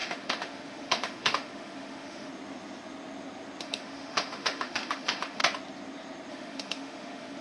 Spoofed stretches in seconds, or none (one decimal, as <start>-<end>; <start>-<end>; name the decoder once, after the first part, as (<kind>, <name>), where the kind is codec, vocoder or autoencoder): 0.0-2.3 (autoencoder, DAC-VAE); 3.6-5.4; 6.3-7.4